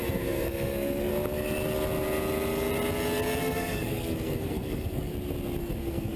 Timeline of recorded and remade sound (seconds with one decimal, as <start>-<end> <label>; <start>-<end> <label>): 0.0-1.1 remade; 1.1-3.4 recorded; 3.4-5.1 remade; 5.1-5.6 recorded; 5.6-6.2 remade